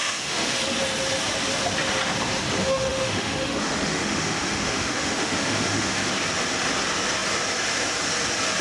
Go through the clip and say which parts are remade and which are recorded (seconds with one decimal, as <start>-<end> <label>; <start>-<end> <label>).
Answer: 0.0-0.6 remade; 0.6-2.6 recorded; 2.6-6.1 remade; 6.1-8.6 recorded